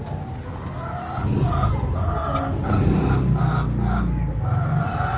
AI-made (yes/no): no